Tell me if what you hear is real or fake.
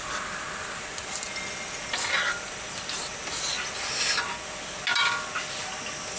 real